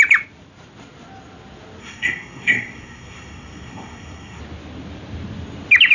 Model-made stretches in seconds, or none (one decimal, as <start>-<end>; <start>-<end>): 1.8-4.4